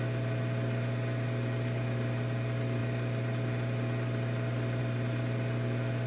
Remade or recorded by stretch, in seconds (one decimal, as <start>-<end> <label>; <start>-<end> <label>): 0.0-6.1 recorded